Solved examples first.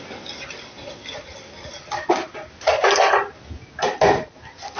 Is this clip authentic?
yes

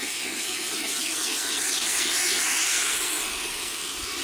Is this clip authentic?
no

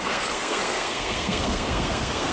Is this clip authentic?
no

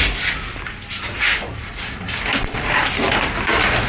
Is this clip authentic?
yes